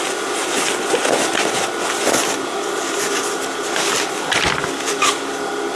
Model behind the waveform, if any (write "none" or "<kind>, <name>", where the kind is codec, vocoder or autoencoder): none